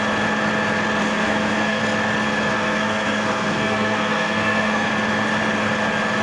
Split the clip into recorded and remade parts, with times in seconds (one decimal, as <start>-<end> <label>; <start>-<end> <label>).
0.0-1.0 recorded; 1.0-1.8 remade; 1.8-2.5 recorded; 2.5-4.9 remade; 4.9-6.2 recorded